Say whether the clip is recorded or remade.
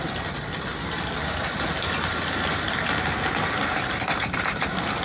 recorded